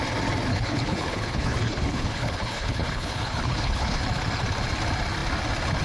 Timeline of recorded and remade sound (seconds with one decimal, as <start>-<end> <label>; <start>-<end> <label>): 0.0-0.5 recorded; 0.5-4.0 remade; 4.0-5.8 recorded